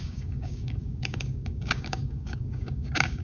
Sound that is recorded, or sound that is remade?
remade